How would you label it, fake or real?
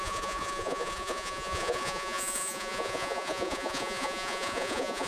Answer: fake